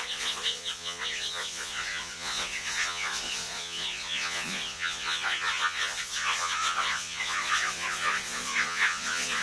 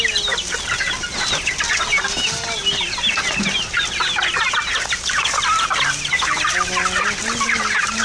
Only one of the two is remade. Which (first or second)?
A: first